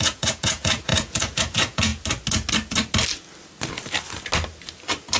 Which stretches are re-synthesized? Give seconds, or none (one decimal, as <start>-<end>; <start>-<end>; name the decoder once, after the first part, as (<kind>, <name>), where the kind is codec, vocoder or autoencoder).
0.0-1.9 (vocoder, Vocos)